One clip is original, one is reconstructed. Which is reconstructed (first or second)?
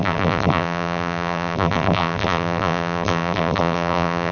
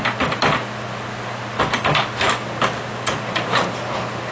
first